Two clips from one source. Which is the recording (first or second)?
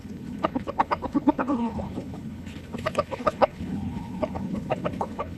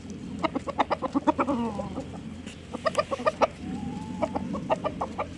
second